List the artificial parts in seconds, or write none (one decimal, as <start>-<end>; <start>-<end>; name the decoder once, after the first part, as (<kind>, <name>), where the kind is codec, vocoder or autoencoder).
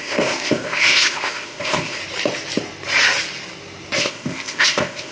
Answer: 0.0-2.0 (codec, ZipCodec); 4.0-5.1